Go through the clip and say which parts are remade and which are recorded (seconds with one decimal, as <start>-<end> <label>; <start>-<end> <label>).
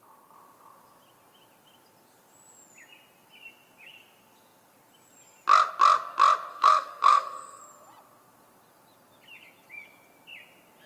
0.0-6.5 recorded; 6.5-7.6 remade; 7.6-10.9 recorded